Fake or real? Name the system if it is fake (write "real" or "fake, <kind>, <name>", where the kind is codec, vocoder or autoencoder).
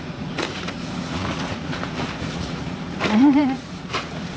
fake, vocoder, Vocos